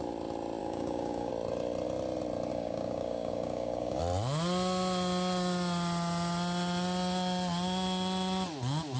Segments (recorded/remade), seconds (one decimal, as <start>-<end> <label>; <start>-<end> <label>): 0.0-0.6 recorded; 0.6-1.3 remade; 1.3-2.5 recorded; 2.5-4.0 remade; 4.0-9.0 recorded